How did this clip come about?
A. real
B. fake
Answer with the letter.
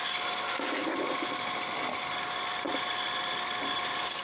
A